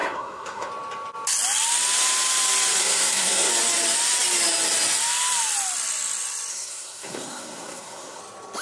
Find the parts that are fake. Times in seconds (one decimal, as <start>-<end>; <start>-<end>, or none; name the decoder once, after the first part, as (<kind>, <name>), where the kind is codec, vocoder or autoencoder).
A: 0.0-0.7 (codec, SNAC); 2.8-3.5; 6.5-8.2

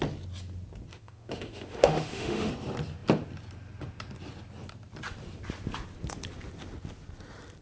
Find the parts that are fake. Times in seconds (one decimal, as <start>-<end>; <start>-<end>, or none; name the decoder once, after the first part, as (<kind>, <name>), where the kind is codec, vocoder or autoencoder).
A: 0.9-2.5 (autoencoder, DAC-VAE)